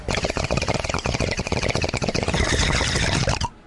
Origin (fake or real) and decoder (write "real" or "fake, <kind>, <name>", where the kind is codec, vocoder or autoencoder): real